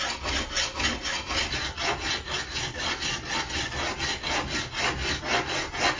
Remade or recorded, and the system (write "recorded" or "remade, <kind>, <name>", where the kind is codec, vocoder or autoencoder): recorded